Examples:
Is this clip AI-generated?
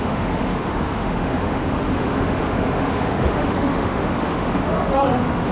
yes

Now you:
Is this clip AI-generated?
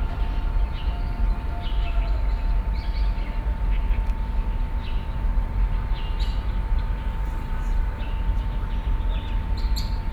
no